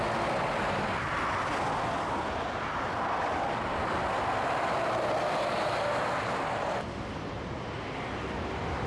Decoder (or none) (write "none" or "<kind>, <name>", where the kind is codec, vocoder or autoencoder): none